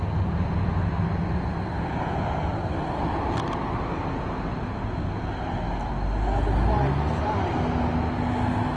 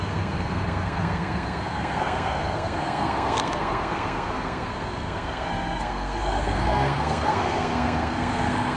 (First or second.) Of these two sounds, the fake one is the second